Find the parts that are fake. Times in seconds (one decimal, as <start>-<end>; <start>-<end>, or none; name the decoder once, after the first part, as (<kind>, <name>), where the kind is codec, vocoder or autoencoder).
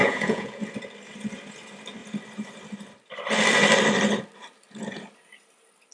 0.0-0.6 (vocoder, Vocos)